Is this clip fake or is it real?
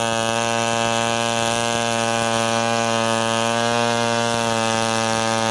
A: real